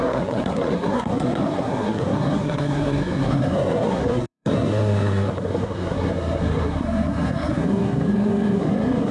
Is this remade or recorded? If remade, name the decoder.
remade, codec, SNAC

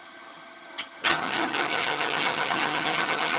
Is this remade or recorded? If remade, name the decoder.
remade, vocoder, HiFi-GAN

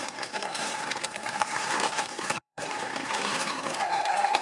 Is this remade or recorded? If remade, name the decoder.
remade, codec, SNAC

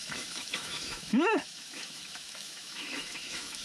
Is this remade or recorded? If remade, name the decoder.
remade, autoencoder, DAC-VAE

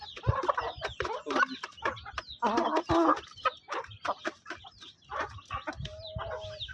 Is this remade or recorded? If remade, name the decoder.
recorded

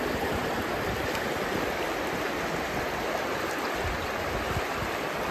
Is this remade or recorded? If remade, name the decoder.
recorded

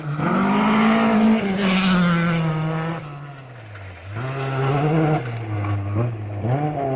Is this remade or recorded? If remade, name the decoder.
recorded